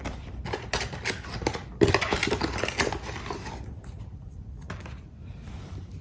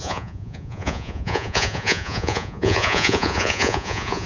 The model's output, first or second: second